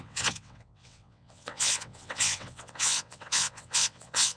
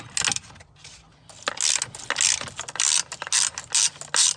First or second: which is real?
second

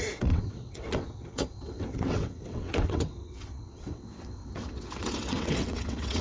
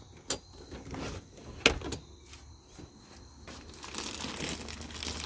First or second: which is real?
second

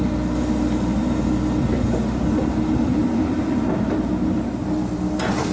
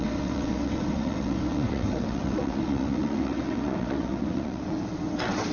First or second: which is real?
first